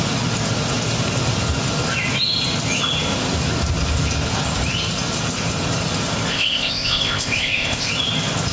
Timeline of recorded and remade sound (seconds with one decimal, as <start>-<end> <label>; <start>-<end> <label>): 0.0-6.3 recorded; 6.3-7.9 remade; 7.9-8.5 recorded